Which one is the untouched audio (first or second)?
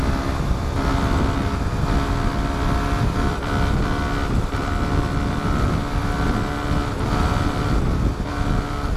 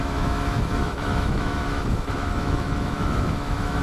first